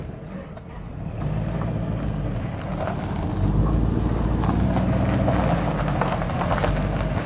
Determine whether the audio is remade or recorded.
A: recorded